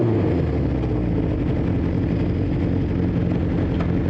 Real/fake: real